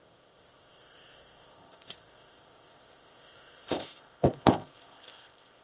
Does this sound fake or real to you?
fake